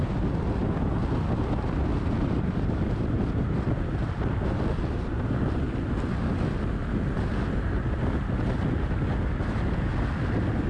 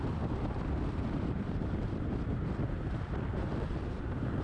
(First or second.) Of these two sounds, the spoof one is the second